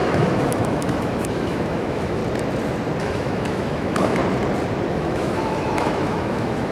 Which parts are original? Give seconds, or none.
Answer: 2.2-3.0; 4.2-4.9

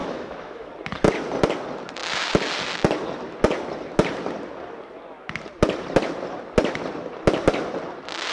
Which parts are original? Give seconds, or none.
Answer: 0.7-8.3

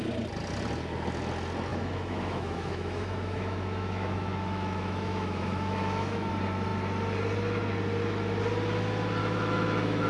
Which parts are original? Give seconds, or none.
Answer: 0.0-1.7; 6.3-9.2

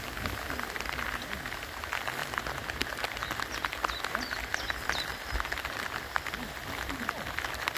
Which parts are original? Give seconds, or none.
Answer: 0.0-7.8

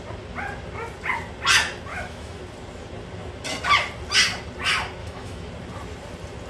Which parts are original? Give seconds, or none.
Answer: 0.0-1.9; 2.4-5.0; 5.5-6.5

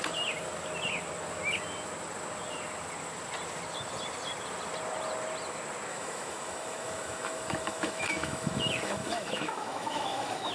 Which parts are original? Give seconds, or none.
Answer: 0.0-5.9